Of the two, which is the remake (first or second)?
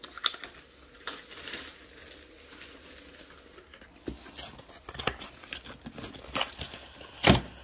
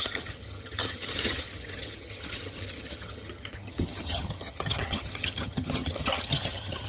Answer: second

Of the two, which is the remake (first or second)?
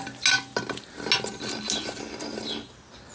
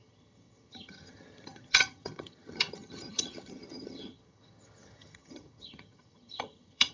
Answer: second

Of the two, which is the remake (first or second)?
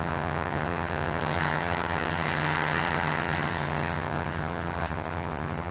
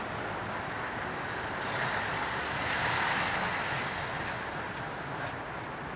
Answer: first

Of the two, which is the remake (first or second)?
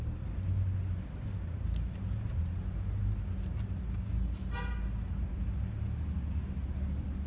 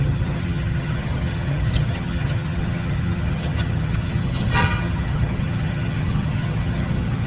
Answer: second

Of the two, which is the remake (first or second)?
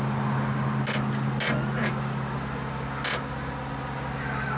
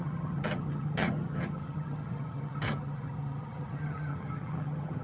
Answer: second